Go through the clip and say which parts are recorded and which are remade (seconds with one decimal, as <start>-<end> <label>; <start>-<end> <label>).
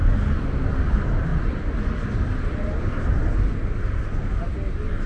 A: 0.0-5.1 recorded